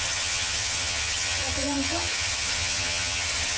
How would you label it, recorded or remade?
remade